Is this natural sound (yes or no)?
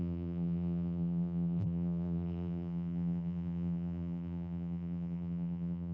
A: no